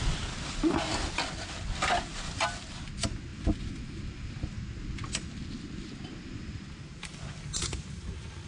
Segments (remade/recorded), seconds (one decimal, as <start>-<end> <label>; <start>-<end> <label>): 0.0-8.5 recorded